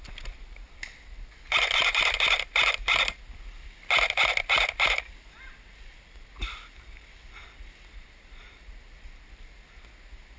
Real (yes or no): yes